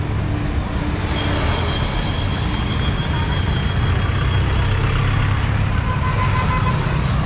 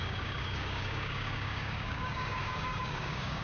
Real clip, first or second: first